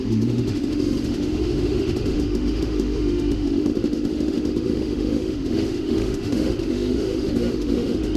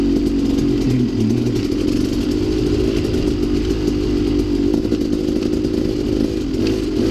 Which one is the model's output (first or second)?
first